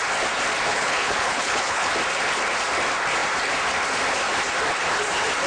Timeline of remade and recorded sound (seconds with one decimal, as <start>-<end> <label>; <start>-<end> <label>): 0.0-0.7 recorded; 0.7-1.9 remade; 1.9-5.5 recorded